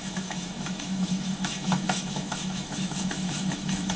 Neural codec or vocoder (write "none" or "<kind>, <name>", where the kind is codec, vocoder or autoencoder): autoencoder, DAC-VAE